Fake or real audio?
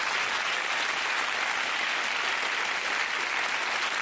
real